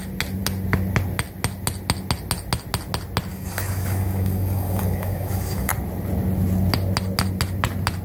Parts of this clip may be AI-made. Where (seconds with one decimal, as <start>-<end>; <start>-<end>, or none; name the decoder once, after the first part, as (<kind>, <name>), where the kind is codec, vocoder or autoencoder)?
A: 3.3-5.7 (codec, DAC)